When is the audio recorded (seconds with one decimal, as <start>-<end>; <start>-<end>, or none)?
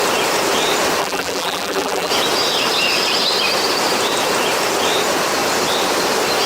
0.0-1.0; 2.1-6.5